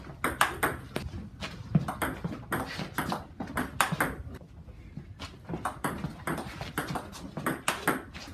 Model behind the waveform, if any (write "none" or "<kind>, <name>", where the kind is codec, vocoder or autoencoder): none